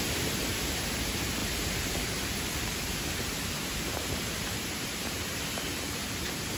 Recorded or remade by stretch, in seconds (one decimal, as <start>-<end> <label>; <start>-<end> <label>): 0.0-6.6 remade

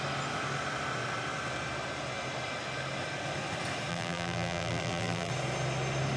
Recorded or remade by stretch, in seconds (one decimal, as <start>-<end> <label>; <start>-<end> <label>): 0.0-3.9 recorded; 3.9-5.3 remade; 5.3-6.2 recorded

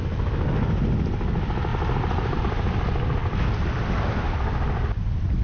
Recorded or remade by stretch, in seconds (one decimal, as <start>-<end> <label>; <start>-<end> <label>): 0.0-1.7 recorded; 1.7-2.4 remade; 2.4-5.4 recorded